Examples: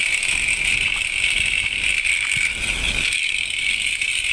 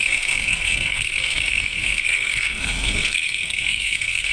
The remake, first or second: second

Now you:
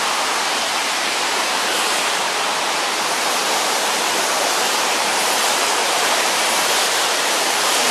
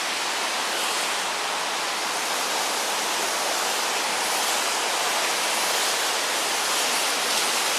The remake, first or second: first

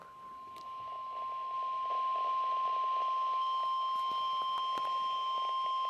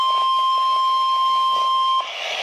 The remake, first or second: second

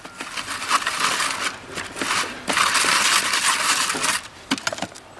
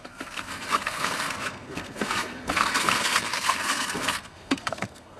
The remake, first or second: second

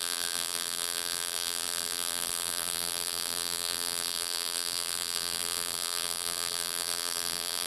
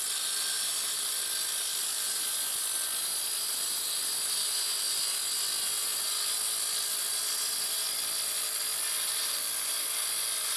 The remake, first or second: first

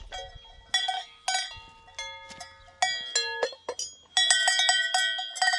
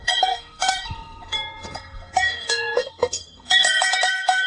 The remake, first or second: second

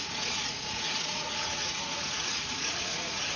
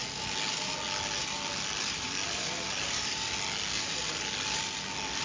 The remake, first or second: first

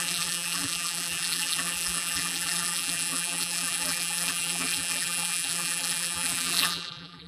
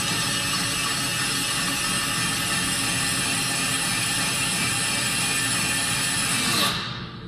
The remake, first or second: first